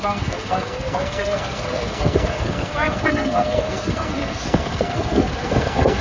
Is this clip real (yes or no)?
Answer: no